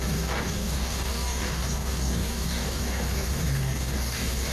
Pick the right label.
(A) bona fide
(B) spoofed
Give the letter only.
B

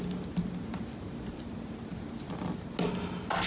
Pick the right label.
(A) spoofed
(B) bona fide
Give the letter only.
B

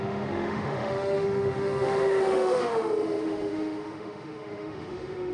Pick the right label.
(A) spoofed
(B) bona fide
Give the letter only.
A